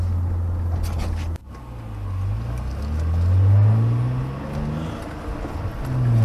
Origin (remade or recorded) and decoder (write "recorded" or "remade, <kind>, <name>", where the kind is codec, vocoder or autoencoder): recorded